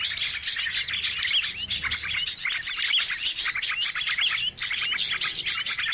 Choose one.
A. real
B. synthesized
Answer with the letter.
A